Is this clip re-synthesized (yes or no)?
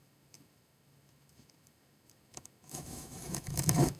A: yes